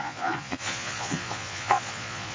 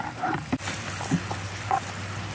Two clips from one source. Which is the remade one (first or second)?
first